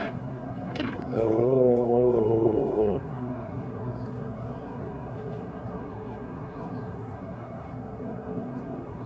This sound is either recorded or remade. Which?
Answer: remade